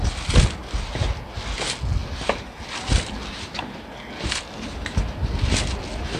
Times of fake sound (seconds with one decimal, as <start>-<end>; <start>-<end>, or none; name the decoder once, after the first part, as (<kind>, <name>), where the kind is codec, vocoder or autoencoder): none